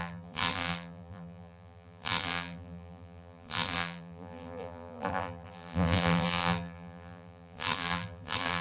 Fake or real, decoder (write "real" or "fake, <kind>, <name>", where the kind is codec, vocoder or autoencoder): fake, vocoder, BigVGAN v2